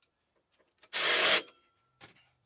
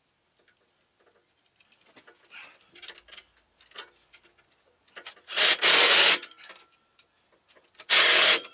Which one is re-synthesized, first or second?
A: first